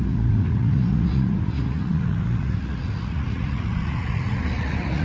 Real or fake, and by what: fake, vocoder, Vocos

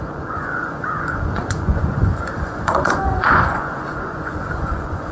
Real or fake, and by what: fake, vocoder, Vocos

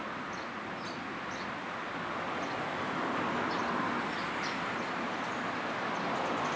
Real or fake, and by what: real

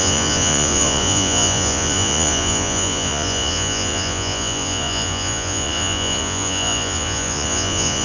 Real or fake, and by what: fake, vocoder, Vocos